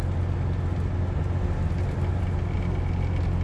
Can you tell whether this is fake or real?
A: real